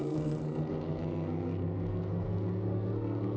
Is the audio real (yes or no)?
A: no